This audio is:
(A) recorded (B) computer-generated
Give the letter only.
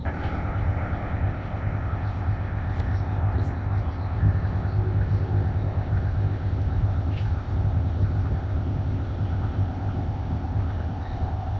B